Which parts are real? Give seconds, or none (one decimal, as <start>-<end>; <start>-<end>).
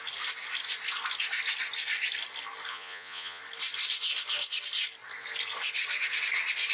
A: 0.0-2.7; 3.4-6.7